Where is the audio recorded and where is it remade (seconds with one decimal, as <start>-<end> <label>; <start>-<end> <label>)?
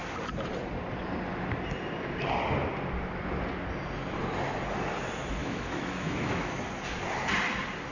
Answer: 0.0-5.4 recorded; 5.4-6.6 remade; 6.6-7.9 recorded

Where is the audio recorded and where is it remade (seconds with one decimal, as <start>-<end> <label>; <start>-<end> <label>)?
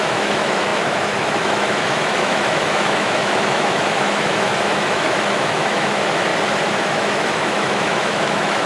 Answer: 0.0-6.3 remade; 6.3-6.8 recorded; 6.8-8.7 remade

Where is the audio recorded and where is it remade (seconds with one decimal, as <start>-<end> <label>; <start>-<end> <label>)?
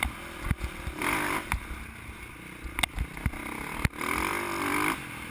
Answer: 0.0-4.3 recorded; 4.3-5.3 remade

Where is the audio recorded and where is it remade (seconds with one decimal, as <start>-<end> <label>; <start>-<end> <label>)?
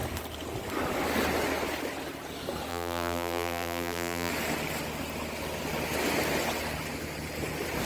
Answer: 0.0-2.7 recorded; 2.7-4.3 remade; 4.3-7.8 recorded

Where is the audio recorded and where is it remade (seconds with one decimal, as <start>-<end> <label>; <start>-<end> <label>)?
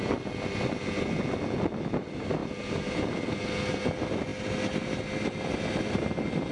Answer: 0.0-6.5 recorded